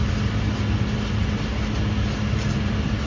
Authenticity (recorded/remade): recorded